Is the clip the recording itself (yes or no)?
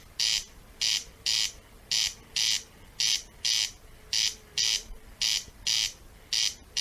yes